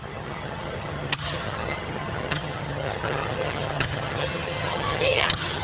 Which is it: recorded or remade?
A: remade